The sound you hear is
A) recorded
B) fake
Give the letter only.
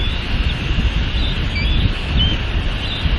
A